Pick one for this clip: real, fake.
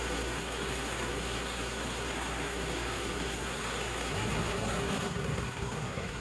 fake